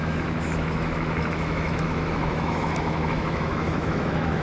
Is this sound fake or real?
fake